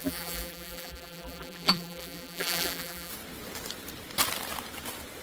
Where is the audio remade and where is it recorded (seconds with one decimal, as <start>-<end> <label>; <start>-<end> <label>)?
0.0-3.1 remade; 3.1-5.2 recorded